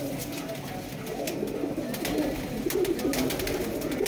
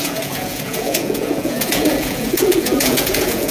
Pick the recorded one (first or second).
first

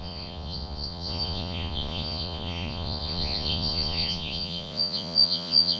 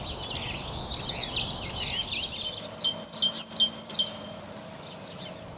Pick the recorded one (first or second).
second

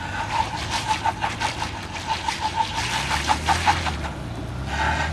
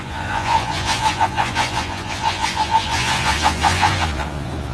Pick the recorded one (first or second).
first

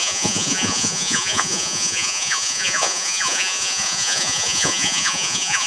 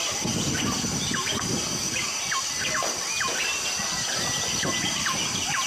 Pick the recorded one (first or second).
second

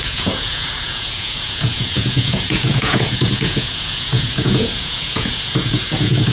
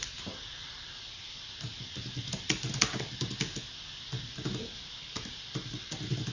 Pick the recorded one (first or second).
second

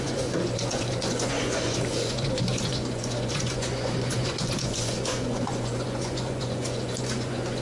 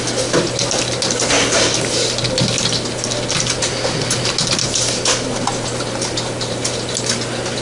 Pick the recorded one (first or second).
second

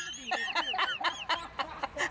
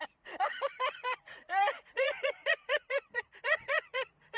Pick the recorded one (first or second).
first